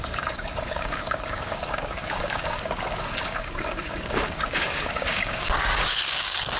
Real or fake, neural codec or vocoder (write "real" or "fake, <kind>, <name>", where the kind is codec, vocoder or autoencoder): fake, codec, DAC